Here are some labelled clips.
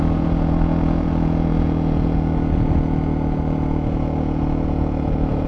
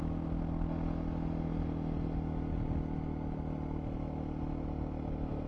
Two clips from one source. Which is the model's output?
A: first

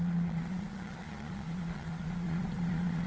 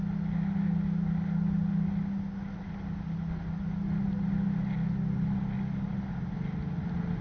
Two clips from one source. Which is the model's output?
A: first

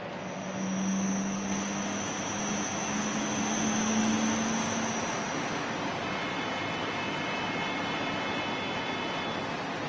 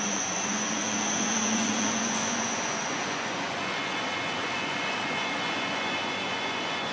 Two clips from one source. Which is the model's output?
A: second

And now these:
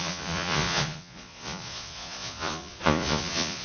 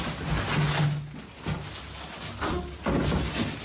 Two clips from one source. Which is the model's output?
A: first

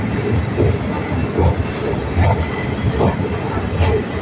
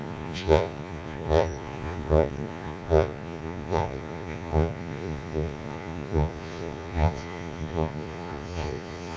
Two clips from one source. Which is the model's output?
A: second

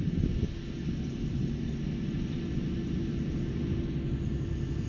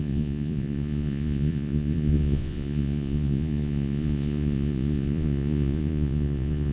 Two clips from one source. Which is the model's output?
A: second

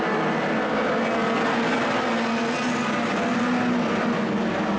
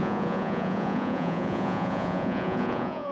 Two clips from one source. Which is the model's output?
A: second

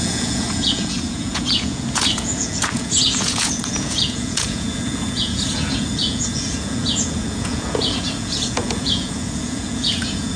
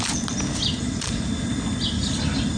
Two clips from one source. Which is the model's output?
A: first